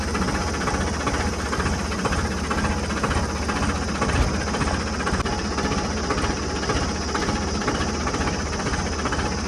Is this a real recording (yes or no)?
yes